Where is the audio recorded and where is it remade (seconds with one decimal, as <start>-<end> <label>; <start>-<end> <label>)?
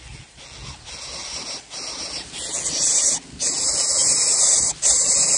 0.0-5.4 recorded